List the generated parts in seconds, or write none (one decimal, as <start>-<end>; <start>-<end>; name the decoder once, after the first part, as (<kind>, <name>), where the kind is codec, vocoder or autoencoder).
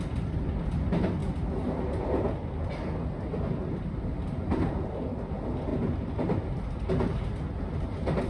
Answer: none